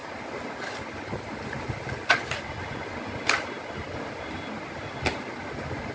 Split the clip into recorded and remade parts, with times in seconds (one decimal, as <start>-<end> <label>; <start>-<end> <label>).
0.0-5.9 recorded

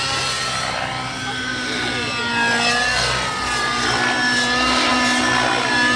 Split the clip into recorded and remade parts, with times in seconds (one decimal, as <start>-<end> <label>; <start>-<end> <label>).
0.0-6.0 recorded

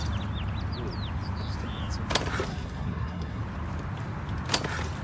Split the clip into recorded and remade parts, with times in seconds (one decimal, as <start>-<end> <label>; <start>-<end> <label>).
0.0-2.5 recorded; 2.5-3.4 remade; 3.4-5.0 recorded

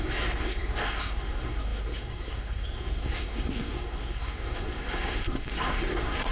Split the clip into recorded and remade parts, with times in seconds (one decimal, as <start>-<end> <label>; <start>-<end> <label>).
0.0-6.3 remade

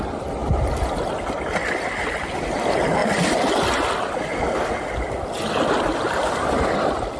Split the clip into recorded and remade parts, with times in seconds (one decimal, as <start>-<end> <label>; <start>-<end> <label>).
0.0-0.4 recorded; 0.4-1.5 remade; 1.5-7.2 recorded

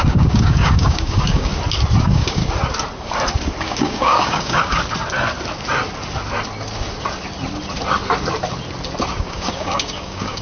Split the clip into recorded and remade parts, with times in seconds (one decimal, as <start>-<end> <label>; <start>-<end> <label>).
0.0-1.5 remade; 1.5-2.0 recorded; 2.0-2.4 remade; 2.4-3.6 recorded; 3.6-4.7 remade; 4.7-9.2 recorded; 9.2-10.4 remade